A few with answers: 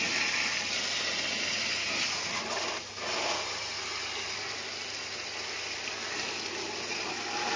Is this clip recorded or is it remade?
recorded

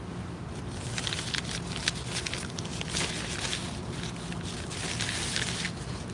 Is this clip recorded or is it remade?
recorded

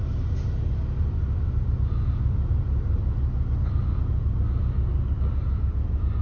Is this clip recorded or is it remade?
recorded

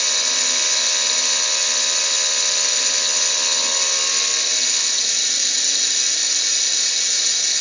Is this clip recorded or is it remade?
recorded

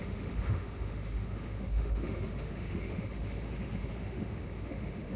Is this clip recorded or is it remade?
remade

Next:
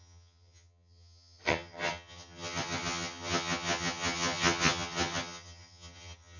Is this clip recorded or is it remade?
remade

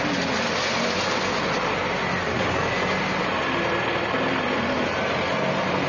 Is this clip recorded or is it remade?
recorded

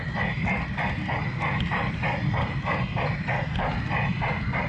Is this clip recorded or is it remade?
recorded